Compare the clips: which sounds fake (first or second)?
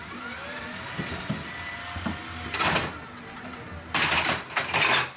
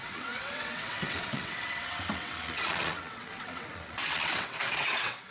second